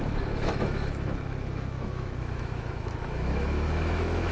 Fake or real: fake